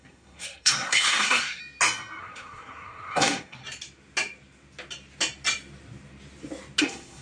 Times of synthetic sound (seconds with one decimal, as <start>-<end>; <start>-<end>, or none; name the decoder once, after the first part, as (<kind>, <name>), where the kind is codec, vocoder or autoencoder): 0.0-1.6 (codec, SNAC); 2.2-3.6; 6.8-7.2